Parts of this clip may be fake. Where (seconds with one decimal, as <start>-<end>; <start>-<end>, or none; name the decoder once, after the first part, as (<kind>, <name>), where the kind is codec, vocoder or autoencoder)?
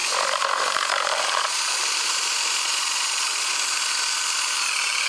none